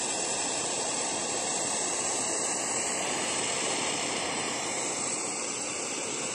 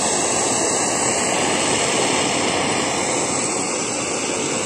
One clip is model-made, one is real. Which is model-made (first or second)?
first